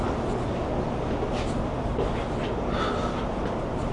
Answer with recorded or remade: recorded